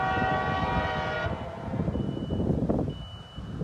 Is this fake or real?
real